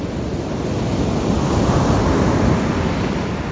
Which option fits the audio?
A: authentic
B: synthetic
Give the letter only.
A